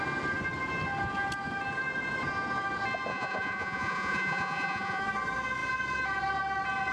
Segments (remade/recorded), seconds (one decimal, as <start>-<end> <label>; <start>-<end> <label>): 0.0-3.1 recorded; 3.1-5.0 remade; 5.0-6.9 recorded